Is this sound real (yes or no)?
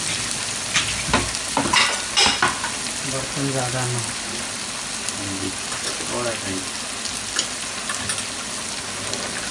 yes